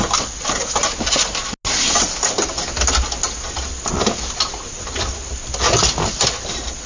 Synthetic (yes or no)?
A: no